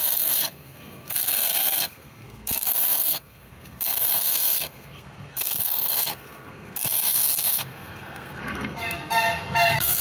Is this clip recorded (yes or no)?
no